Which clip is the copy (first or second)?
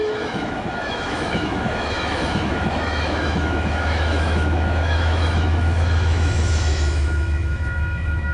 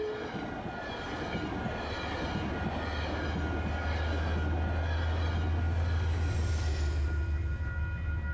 first